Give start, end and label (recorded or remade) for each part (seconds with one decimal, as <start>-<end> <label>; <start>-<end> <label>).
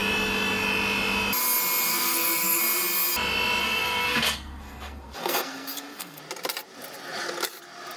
0.0-1.9 recorded; 1.9-2.6 remade; 2.6-3.6 recorded; 3.6-6.2 remade; 6.2-8.0 recorded